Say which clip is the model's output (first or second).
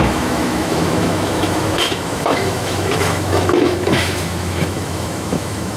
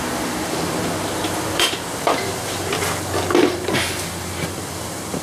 first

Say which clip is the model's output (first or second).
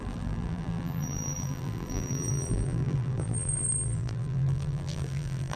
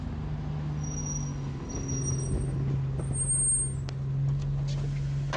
first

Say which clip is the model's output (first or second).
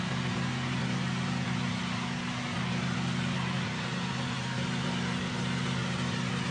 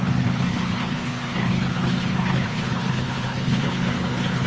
second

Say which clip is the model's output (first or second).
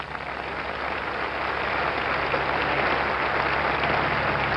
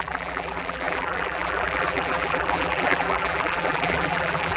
second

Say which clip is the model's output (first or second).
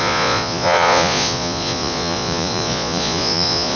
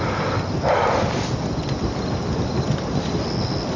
first